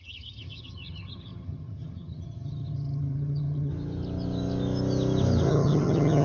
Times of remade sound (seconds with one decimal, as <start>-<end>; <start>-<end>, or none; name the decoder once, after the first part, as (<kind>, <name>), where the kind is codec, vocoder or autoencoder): 0.0-3.7 (vocoder, HiFi-GAN); 5.5-6.2